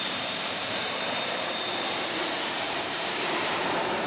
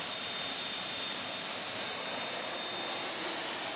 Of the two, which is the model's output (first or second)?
first